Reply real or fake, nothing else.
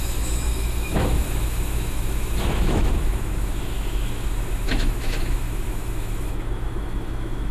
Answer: fake